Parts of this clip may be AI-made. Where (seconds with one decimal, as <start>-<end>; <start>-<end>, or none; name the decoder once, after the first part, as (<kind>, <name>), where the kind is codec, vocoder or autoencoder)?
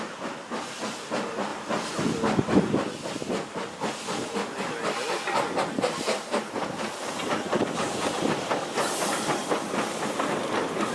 1.5-2.0 (vocoder, BigVGAN v2)